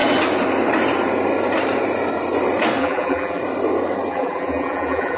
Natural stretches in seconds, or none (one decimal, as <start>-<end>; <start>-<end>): 0.0-2.8; 3.4-4.1